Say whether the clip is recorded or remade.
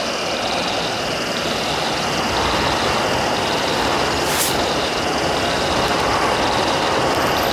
recorded